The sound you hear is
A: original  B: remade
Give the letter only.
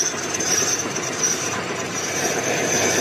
B